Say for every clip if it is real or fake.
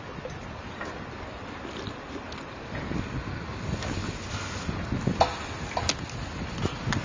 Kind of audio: real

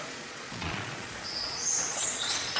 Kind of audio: fake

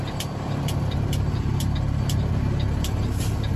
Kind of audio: fake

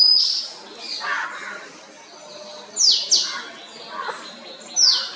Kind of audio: real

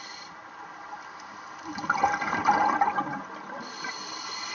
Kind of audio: fake